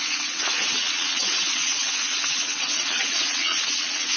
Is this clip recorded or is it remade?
remade